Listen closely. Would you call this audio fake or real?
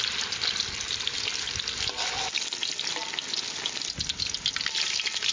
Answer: real